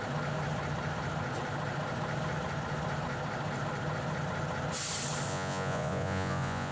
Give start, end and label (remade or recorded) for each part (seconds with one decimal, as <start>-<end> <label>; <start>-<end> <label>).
0.0-5.3 recorded; 5.3-6.7 remade